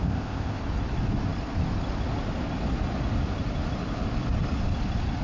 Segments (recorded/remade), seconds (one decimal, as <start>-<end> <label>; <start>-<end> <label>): 0.0-0.6 remade; 0.6-5.2 recorded